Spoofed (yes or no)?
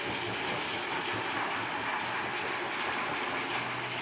no